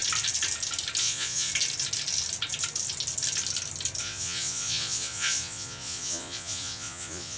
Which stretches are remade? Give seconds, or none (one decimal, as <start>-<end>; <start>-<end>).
1.0-1.5; 4.0-7.4